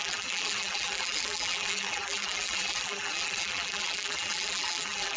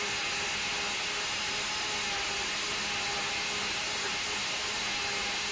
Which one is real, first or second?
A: second